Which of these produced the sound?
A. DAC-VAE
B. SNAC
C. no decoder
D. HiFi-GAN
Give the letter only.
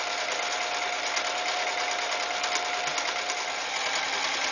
C